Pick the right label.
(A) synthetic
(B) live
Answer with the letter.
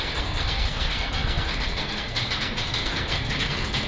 A